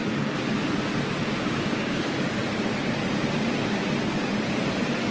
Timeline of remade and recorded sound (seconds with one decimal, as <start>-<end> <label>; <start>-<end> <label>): 0.0-1.2 recorded; 1.2-2.0 remade; 2.0-5.1 recorded